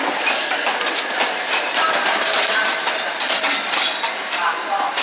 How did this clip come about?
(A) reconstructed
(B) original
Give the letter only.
B